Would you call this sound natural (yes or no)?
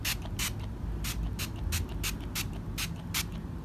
yes